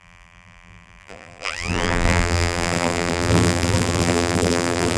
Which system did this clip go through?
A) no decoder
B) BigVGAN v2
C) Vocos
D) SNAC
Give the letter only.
B